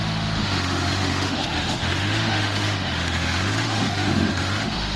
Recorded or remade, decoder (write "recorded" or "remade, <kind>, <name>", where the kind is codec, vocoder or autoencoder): remade, autoencoder, DAC-VAE